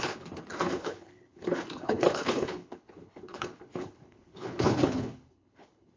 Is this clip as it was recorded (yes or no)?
no